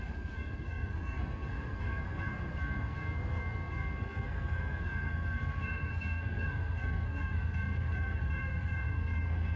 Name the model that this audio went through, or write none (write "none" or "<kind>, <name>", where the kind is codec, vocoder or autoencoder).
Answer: codec, SNAC